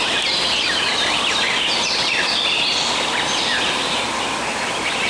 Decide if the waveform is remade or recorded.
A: recorded